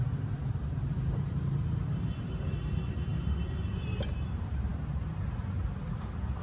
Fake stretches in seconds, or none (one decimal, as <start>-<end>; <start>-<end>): 0.0-6.4